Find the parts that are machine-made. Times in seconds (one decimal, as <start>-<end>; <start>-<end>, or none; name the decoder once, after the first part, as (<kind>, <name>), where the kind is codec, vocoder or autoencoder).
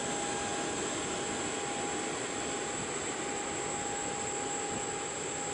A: none